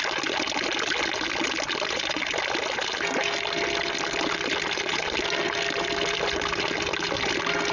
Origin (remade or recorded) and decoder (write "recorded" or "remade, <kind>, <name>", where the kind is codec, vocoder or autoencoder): recorded